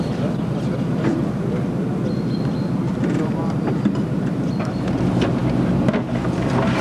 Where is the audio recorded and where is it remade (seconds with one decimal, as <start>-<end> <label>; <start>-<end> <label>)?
0.0-6.8 recorded